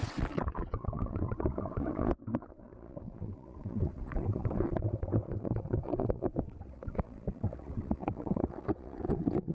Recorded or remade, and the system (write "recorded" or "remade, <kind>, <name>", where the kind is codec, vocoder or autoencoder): remade, vocoder, WaveNeXt